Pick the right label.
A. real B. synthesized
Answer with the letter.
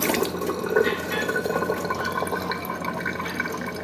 A